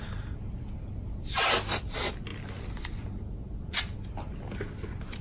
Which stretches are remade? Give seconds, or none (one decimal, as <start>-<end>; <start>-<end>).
none